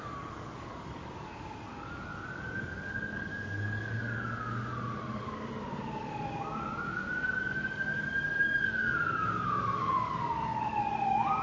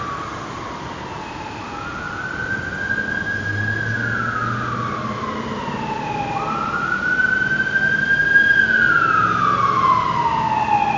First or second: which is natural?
second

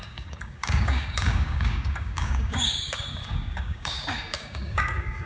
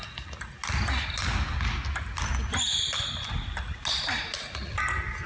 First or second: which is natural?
second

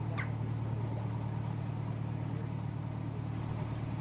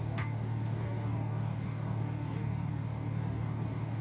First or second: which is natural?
first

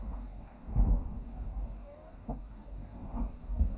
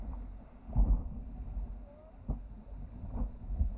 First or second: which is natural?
second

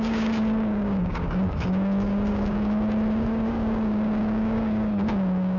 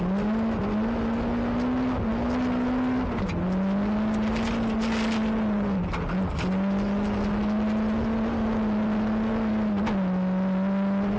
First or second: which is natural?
second